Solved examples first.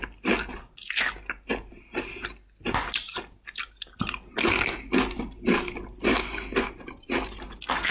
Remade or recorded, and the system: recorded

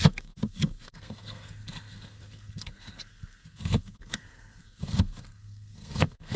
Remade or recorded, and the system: remade, codec, SNAC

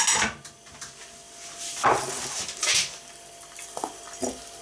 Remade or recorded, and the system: recorded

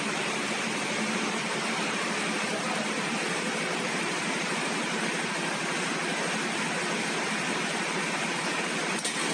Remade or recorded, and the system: remade, vocoder, BigVGAN v2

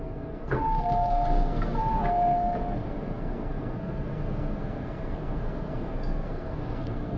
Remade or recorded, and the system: remade, codec, SNAC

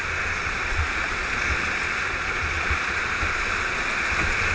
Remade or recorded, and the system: recorded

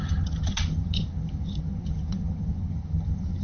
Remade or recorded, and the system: remade, vocoder, HiFi-GAN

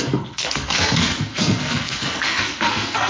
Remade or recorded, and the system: remade, codec, SNAC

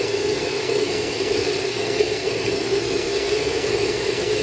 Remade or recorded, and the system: remade, codec, SNAC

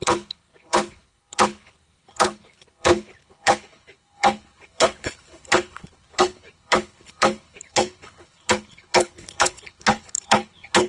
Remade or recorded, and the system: remade, codec, HILCodec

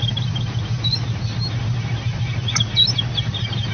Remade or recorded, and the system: recorded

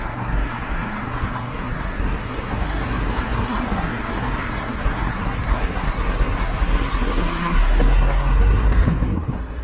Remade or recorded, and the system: remade, codec, SNAC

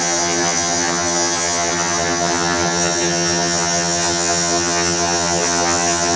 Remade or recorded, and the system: remade, vocoder, HiFi-GAN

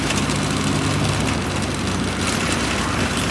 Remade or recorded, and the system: remade, vocoder, BigVGAN v2